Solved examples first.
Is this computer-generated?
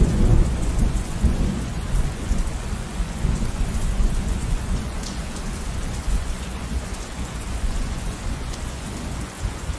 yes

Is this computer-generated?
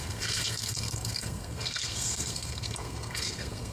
yes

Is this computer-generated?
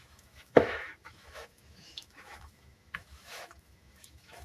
yes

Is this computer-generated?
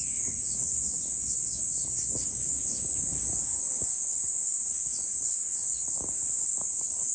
yes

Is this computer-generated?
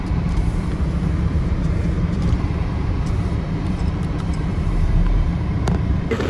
yes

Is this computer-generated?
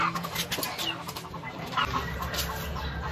no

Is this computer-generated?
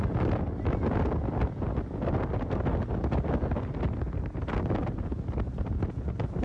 no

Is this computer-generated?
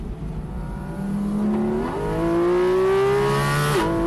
no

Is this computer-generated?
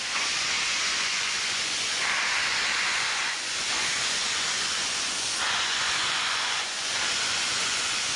yes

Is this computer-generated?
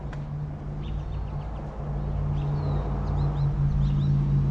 no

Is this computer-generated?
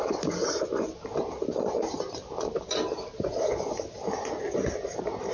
no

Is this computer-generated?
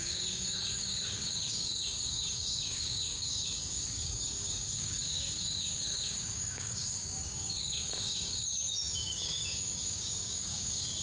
yes